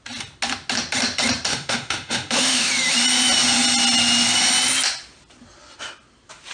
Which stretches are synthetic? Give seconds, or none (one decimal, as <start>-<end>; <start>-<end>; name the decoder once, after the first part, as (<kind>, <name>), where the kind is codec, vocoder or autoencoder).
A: 1.5-2.7 (autoencoder, DAC-VAE)